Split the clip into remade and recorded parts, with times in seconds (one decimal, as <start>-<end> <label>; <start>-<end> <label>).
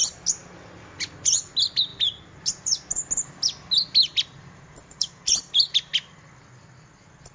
0.0-7.3 recorded